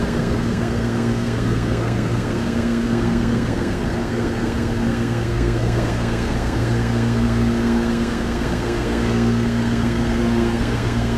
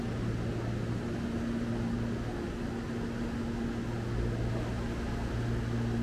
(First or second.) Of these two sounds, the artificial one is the first